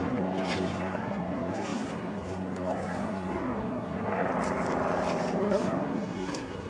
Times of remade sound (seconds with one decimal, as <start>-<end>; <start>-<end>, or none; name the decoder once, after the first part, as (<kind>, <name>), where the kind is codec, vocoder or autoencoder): 0.0-4.3 (codec, SNAC); 5.4-6.7